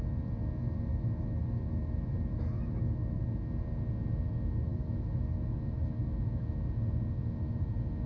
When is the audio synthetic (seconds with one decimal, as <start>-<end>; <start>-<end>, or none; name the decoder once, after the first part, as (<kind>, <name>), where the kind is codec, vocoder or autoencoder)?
0.9-3.2 (autoencoder, DAC-VAE); 4.7-6.4